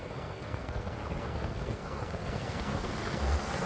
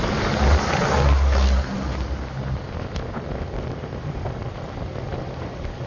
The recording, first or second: second